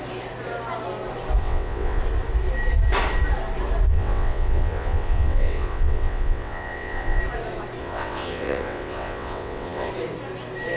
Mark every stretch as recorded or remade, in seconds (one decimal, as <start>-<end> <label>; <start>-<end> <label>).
0.0-1.4 recorded; 1.4-2.0 remade; 2.0-3.9 recorded; 3.9-7.2 remade; 7.2-7.8 recorded; 7.8-9.9 remade; 9.9-10.8 recorded